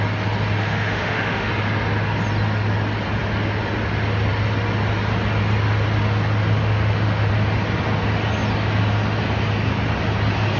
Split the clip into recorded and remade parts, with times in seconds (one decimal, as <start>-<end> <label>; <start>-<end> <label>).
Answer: 0.0-0.6 recorded; 0.6-1.5 remade; 1.5-6.6 recorded; 6.6-7.3 remade; 7.3-10.6 recorded